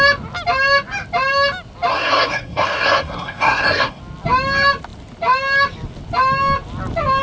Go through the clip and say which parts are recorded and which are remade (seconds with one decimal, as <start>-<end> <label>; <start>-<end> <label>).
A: 0.0-1.9 recorded; 1.9-4.0 remade; 4.0-7.2 recorded